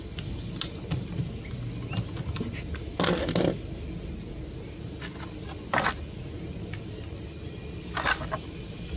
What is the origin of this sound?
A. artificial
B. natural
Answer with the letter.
B